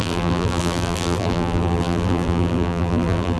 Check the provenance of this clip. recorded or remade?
remade